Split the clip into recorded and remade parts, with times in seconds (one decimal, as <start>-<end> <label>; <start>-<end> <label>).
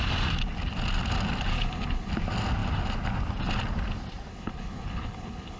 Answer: 0.0-1.5 recorded; 1.5-2.1 remade; 2.1-4.3 recorded; 4.3-5.6 remade